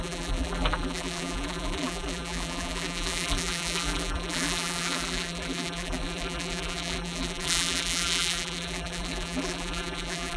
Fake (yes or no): yes